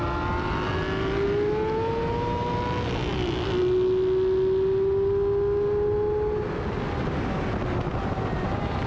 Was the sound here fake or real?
real